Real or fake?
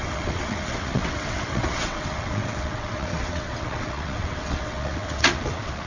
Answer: fake